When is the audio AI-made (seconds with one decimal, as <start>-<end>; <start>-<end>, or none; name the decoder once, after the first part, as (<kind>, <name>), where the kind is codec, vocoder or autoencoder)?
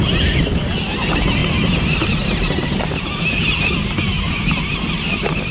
1.4-3.3 (vocoder, BigVGAN v2); 4.1-5.5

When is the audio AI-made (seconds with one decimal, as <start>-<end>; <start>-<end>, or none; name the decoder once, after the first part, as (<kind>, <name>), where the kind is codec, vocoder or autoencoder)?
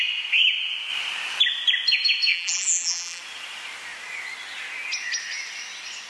2.3-3.2 (vocoder, BigVGAN v2)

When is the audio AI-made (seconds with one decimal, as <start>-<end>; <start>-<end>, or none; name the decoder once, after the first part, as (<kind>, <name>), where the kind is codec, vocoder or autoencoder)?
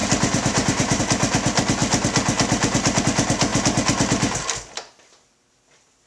0.0-1.0 (vocoder, BigVGAN v2)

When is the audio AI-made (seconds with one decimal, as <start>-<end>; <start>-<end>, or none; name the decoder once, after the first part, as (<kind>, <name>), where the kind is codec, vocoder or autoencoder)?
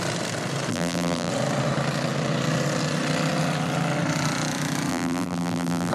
0.7-1.3 (vocoder, BigVGAN v2); 4.9-5.9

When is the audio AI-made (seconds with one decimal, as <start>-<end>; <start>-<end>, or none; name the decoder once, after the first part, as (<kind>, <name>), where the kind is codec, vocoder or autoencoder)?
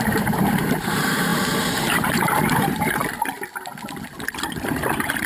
0.0-3.0 (vocoder, BigVGAN v2)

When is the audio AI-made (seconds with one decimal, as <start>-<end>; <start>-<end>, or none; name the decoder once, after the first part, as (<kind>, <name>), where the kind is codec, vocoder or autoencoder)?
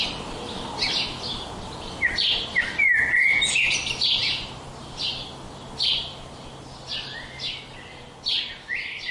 4.2-5.1 (vocoder, BigVGAN v2)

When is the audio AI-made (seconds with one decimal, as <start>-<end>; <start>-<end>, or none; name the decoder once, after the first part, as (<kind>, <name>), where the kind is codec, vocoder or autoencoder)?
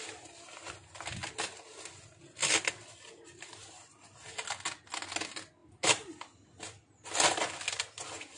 none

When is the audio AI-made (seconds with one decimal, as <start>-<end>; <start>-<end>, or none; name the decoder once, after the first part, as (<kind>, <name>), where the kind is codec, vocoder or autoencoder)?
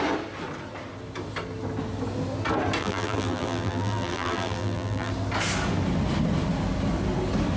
2.8-5.1 (vocoder, BigVGAN v2)